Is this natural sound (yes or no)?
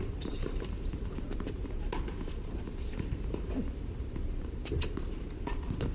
no